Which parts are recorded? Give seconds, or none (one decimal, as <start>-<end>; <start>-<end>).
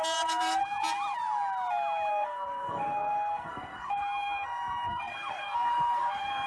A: 0.6-2.1